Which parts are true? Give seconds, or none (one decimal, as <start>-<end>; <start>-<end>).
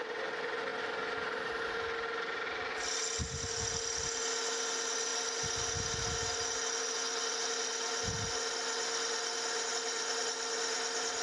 0.0-11.2